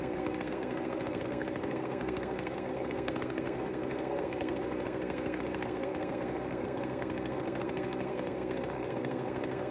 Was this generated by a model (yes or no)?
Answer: yes